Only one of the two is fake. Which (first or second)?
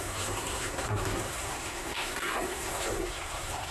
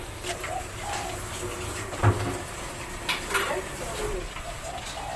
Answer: first